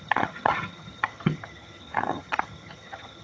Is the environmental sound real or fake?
fake